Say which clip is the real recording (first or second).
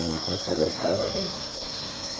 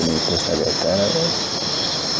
second